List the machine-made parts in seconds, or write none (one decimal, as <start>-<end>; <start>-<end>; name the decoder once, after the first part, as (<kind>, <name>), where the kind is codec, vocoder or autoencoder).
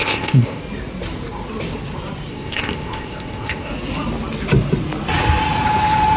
0.0-0.6 (codec, ZipCodec); 2.3-3.7